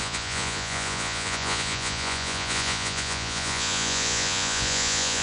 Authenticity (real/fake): fake